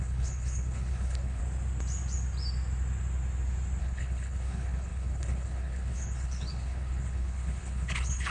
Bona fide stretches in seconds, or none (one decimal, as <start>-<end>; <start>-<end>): 1.4-3.8